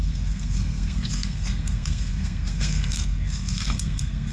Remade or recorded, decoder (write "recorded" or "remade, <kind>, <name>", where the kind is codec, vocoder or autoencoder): remade, codec, SNAC